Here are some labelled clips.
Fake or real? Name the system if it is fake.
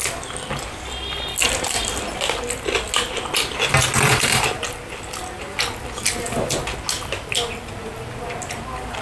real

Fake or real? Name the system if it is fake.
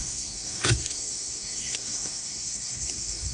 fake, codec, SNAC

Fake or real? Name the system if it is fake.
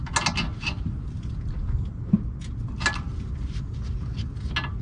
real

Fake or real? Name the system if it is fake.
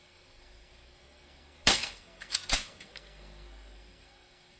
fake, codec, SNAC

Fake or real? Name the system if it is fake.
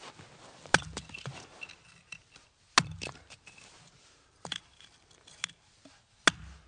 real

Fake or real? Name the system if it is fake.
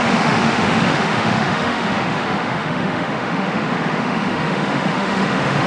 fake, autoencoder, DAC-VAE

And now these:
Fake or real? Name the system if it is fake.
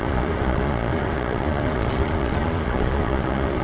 fake, vocoder, Vocos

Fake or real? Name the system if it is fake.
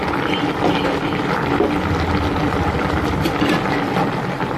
real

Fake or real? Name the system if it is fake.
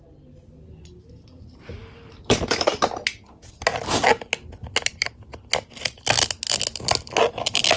real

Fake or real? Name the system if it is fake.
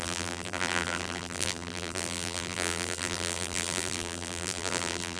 fake, vocoder, BigVGAN v2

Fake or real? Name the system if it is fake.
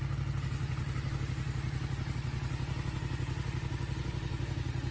real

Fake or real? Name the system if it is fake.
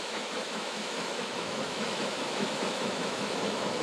fake, autoencoder, DAC-VAE